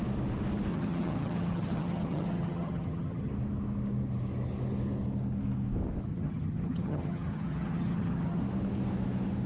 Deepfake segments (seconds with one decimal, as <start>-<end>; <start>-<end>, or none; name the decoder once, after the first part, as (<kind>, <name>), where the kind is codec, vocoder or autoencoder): 0.7-3.3 (vocoder, HiFi-GAN); 6.1-8.4

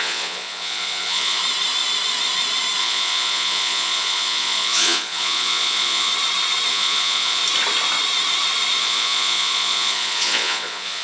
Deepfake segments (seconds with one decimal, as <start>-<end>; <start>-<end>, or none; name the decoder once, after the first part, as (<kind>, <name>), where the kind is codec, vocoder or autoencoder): 0.0-1.4 (vocoder, Vocos); 2.8-6.1; 6.7-7.4; 8.8-11.0

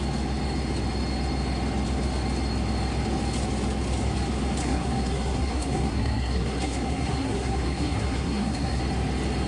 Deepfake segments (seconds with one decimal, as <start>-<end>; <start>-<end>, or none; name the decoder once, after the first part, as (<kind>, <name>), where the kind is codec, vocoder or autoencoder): 4.6-8.8 (codec, SNAC)

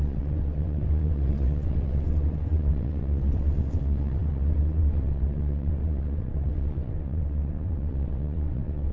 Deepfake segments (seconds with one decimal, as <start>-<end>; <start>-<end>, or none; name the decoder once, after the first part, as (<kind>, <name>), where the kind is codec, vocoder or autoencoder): 0.0-8.9 (vocoder, WaveNeXt)

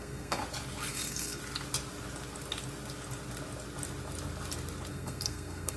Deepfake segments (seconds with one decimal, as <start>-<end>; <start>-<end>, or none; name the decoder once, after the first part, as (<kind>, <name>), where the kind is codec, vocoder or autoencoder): 0.0-0.4 (codec, SNAC); 0.9-1.4; 4.9-5.8